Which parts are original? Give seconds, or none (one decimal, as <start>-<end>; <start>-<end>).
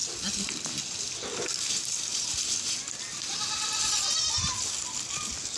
0.0-5.6